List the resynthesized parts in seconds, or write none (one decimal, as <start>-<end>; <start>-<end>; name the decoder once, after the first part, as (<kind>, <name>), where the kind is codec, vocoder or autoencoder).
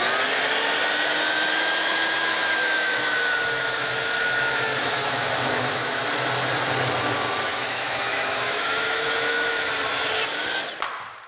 1.5-6.0 (autoencoder, DAC-VAE); 7.5-9.7